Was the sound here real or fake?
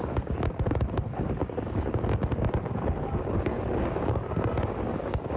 fake